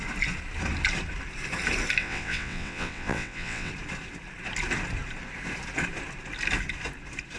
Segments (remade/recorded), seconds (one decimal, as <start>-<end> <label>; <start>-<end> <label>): 0.0-2.0 recorded; 2.0-3.7 remade; 3.7-7.4 recorded